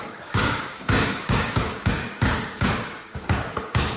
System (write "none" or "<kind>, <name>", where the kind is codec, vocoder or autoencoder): codec, DAC